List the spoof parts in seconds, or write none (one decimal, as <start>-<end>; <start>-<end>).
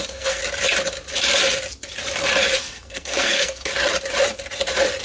0.0-0.4; 2.6-3.7